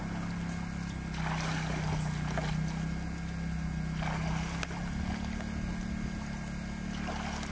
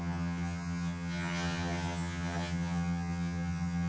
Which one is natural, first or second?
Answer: first